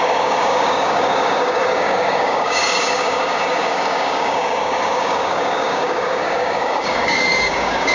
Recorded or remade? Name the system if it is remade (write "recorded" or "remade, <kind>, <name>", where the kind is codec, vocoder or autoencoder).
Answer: remade, codec, DAC